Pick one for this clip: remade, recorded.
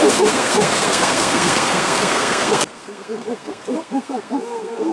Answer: remade